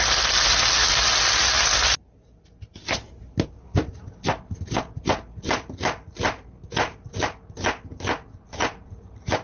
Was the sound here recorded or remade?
recorded